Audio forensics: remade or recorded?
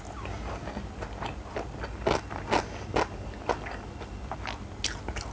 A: recorded